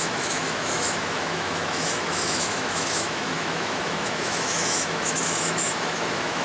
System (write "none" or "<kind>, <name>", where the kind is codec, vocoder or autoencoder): autoencoder, DAC-VAE